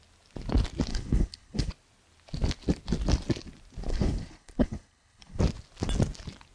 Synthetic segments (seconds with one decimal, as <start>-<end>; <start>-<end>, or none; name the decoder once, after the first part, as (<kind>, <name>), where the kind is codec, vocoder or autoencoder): 0.9-1.7 (codec, HILCodec); 3.9-5.4